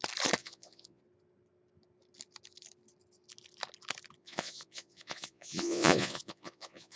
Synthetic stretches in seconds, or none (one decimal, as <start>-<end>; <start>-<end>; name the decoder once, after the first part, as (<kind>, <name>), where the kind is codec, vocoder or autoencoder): 0.4-1.0 (vocoder, Vocos); 4.2-7.0

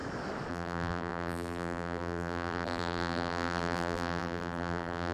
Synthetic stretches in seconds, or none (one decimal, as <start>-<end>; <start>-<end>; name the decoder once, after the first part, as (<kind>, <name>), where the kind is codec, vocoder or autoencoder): 0.5-5.1 (vocoder, BigVGAN v2)

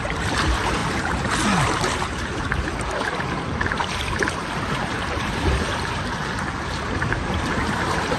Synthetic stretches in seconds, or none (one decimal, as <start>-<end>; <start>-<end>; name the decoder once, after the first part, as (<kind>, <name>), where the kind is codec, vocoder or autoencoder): 0.0-8.2 (vocoder, BigVGAN v2)

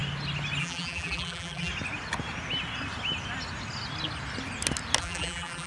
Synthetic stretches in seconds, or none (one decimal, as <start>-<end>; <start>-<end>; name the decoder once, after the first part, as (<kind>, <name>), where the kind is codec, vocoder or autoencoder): 0.6-1.7 (vocoder, BigVGAN v2); 5.0-5.7

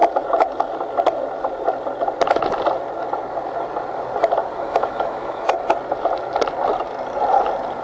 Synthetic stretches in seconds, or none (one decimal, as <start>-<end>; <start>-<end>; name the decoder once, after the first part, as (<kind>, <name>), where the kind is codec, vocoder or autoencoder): 4.5-5.5 (autoencoder, DAC-VAE)

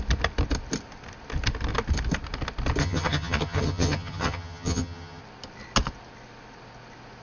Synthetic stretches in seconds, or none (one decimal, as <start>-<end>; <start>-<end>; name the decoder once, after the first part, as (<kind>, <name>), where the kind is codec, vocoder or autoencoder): 2.8-5.2 (vocoder, HiFi-GAN)